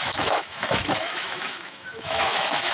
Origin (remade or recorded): remade